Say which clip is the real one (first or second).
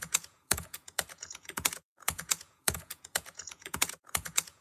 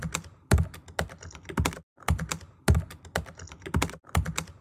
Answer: second